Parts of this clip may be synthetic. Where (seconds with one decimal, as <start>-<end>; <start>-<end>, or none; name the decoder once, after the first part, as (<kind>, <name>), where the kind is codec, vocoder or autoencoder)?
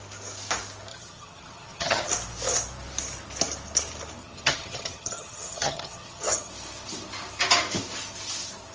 0.9-2.1 (vocoder, HiFi-GAN); 4.2-6.5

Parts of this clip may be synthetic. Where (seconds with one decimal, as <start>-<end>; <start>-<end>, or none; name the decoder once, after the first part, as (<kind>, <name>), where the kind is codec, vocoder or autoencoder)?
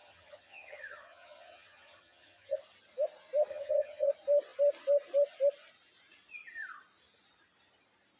0.0-2.6 (vocoder, HiFi-GAN); 3.5-4.1